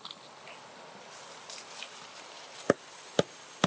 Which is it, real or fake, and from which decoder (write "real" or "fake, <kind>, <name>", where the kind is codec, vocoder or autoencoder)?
real